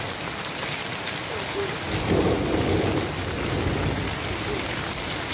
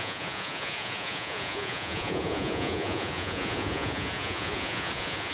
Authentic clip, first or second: first